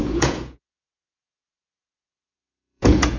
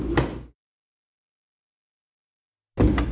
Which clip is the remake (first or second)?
first